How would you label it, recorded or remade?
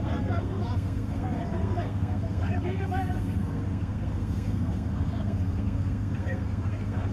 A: remade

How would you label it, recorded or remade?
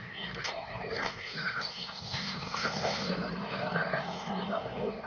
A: remade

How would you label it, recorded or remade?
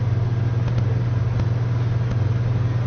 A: recorded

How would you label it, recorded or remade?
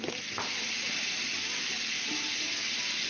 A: recorded